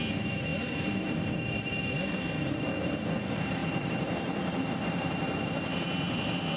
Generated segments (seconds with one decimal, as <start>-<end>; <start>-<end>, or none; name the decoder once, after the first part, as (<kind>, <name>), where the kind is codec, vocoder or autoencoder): 3.6-4.7 (vocoder, BigVGAN v2)

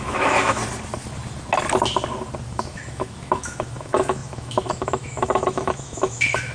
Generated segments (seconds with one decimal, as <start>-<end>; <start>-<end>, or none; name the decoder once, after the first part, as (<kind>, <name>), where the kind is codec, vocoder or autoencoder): 0.0-0.6 (autoencoder, DAC-VAE); 2.5-6.5

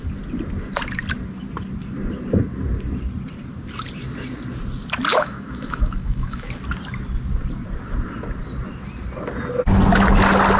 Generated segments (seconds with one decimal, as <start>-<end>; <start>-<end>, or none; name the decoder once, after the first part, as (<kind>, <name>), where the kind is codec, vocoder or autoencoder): 5.1-6.5 (autoencoder, DAC-VAE)

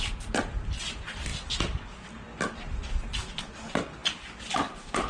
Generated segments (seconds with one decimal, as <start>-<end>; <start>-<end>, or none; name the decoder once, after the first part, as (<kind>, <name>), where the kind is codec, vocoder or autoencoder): none

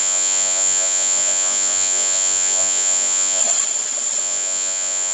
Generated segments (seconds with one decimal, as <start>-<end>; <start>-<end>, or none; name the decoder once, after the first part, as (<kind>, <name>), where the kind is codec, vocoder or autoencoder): 0.0-3.4 (vocoder, Vocos); 4.2-5.1